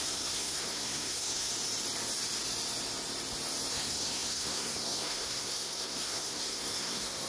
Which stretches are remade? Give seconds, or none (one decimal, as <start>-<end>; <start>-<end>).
0.0-1.5; 3.7-7.3